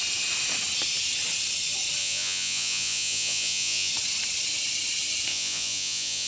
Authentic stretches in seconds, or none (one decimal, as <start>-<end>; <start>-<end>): 0.0-2.0; 3.9-5.3